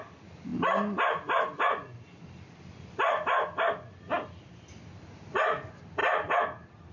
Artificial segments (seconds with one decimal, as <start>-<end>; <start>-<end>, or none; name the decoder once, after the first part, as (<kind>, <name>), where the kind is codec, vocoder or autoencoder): none